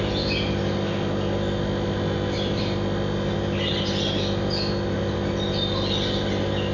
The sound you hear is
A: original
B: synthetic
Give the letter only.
A